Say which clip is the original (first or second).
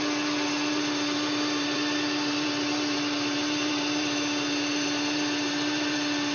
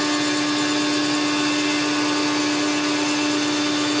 second